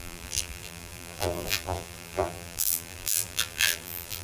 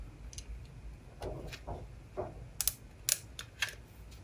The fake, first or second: first